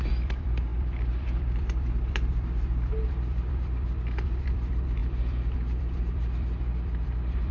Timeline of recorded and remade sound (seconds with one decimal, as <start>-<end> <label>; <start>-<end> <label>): 0.0-7.5 remade